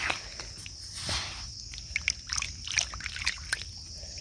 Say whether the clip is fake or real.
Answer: real